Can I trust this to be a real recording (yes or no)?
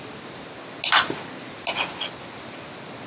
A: yes